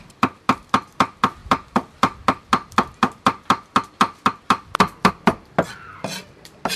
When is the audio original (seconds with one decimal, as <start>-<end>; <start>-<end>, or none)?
0.0-6.8

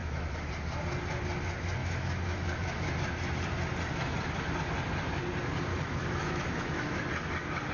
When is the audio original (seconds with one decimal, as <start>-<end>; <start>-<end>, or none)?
0.5-1.8; 2.9-5.7; 7.0-7.7

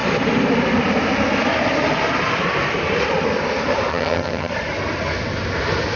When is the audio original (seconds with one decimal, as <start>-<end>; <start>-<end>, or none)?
0.0-3.9; 4.5-6.0

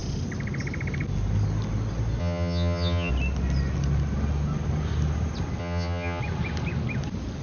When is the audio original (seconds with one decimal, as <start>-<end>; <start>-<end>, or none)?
0.0-2.2; 3.1-5.6; 6.2-7.4

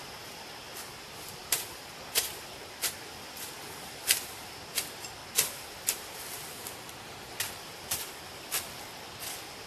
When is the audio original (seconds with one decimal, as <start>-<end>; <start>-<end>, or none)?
none